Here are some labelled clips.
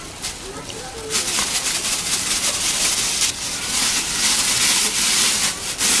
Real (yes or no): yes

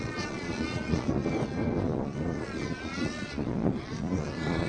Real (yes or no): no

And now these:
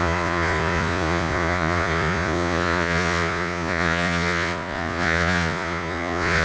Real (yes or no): no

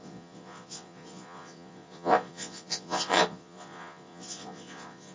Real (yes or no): no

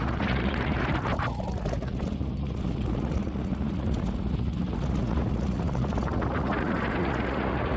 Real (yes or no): no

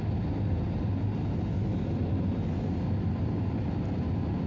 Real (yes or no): yes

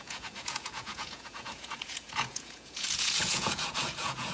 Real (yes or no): no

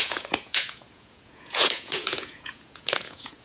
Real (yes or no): no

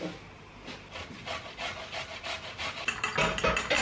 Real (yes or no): yes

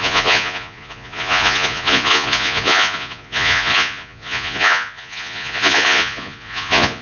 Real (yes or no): no